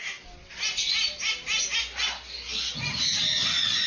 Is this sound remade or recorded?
recorded